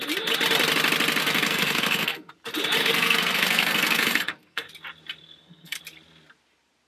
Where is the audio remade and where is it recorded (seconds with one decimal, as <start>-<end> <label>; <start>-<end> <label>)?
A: 0.0-1.2 recorded; 1.2-2.3 remade; 2.3-2.8 recorded; 2.8-4.7 remade; 4.7-5.2 recorded; 5.2-5.8 remade; 5.8-6.9 recorded